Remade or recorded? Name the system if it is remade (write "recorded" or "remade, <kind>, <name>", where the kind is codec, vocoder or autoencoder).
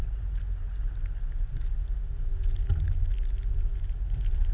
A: recorded